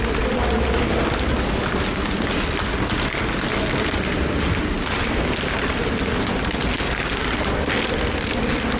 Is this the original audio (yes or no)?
yes